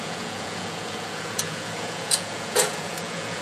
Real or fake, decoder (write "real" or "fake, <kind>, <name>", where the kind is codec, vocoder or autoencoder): fake, vocoder, Vocos